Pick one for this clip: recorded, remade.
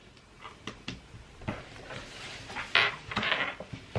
recorded